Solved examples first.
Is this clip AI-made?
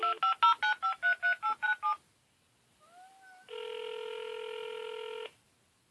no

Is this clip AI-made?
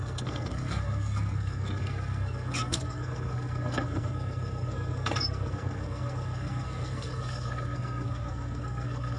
yes